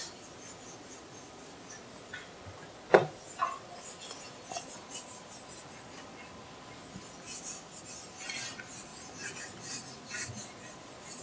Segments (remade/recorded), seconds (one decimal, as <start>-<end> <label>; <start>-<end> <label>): 0.0-11.2 recorded